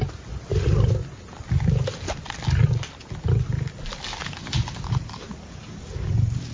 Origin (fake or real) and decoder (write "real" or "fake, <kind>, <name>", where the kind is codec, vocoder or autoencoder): real